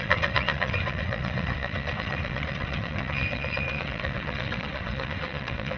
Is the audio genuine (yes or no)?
no